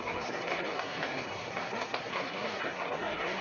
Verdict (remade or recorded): remade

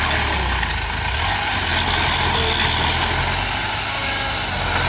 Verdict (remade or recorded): recorded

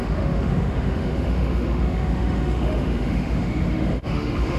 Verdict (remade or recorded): remade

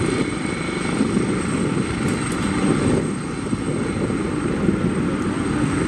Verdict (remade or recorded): recorded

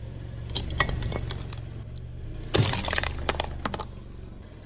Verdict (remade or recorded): recorded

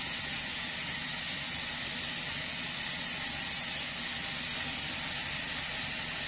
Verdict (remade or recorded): recorded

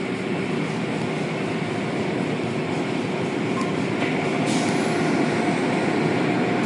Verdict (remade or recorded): remade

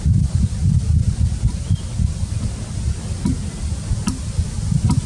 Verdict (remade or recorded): recorded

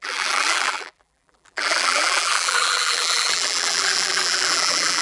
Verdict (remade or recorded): remade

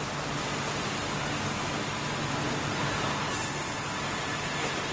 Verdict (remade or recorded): recorded